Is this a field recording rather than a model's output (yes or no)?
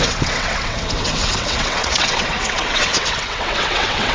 no